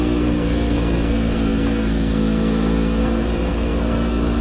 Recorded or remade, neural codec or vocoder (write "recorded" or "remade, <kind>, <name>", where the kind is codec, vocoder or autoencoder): remade, codec, SNAC